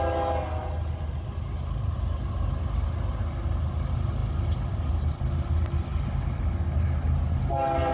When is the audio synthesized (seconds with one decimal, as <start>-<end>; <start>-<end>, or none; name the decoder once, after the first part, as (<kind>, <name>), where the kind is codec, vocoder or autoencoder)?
none